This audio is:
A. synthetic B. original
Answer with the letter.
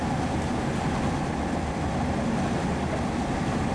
B